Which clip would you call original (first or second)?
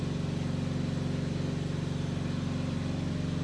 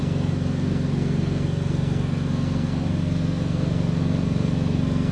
first